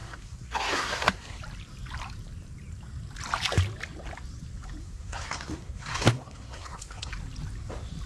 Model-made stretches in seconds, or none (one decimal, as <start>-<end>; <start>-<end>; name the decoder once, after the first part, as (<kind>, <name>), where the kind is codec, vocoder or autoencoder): 0.0-1.4 (codec, SNAC); 4.8-7.1